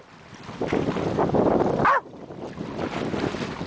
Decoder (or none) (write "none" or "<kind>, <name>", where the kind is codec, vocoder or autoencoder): none